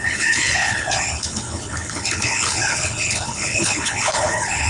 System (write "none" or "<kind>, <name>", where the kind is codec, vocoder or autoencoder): codec, HILCodec